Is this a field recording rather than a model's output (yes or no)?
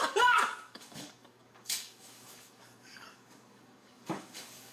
no